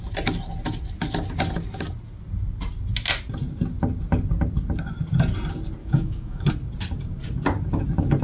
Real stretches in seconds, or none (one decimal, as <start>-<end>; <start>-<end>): 0.0-5.8; 6.5-8.2